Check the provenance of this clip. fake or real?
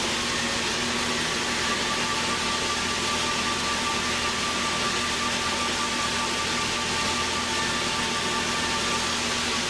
real